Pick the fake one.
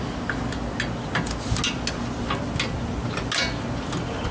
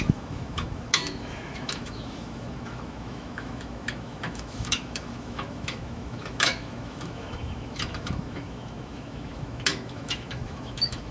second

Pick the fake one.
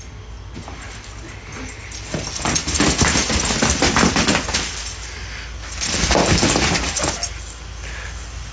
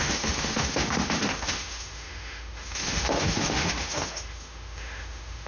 second